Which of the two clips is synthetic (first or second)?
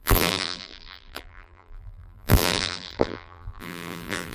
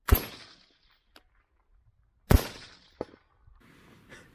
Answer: first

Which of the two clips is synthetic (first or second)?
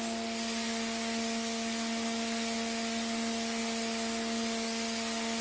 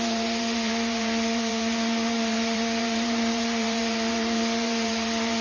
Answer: second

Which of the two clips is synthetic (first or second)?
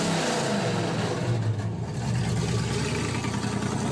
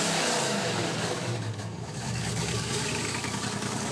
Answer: second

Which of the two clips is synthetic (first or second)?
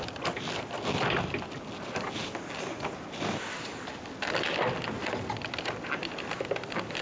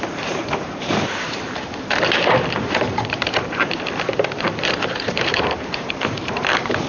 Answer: second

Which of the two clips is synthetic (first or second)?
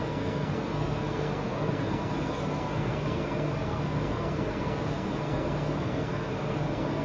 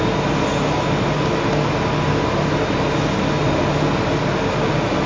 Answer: first